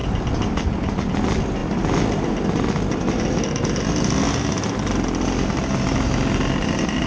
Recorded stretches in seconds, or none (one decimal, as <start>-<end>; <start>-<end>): 0.0-7.1